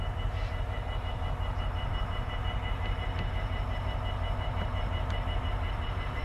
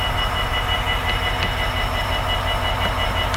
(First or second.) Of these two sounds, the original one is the second